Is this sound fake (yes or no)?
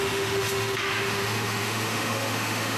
yes